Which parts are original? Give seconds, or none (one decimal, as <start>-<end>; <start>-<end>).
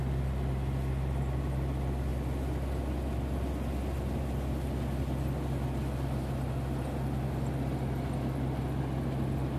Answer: 0.0-9.6